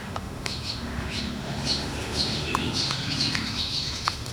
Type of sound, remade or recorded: remade